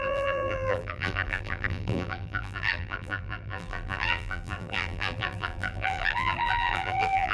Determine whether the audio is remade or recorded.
remade